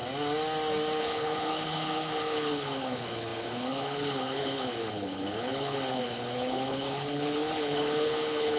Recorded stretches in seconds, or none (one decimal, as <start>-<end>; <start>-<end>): 0.0-1.0